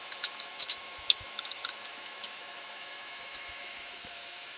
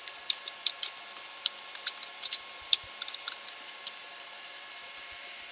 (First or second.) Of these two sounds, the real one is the second